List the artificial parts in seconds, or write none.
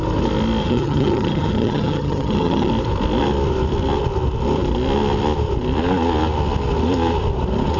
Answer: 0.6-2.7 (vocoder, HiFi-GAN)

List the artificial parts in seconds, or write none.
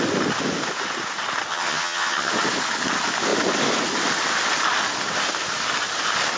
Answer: 1.5-2.3 (vocoder, HiFi-GAN)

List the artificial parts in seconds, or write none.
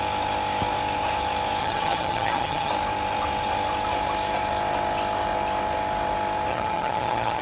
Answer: 1.6-2.7 (vocoder, HiFi-GAN); 6.5-7.4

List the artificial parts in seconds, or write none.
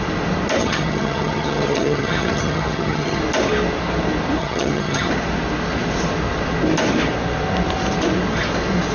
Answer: 0.6-3.2 (vocoder, HiFi-GAN); 4.4-5.1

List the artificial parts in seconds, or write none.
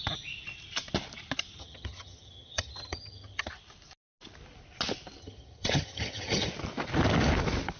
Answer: 1.6-3.5 (vocoder, HiFi-GAN); 5.2-6.5